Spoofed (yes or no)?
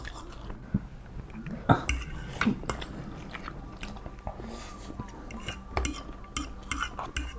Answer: no